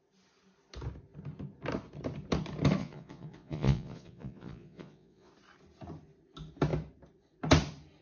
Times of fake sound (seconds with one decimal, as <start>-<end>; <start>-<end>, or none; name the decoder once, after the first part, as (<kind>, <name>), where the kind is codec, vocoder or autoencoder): 2.8-5.3 (vocoder, Vocos)